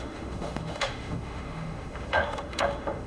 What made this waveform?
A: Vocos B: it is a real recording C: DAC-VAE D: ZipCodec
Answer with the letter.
C